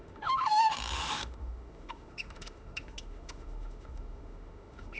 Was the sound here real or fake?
fake